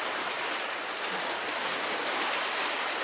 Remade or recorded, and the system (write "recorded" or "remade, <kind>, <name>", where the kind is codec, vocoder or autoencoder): recorded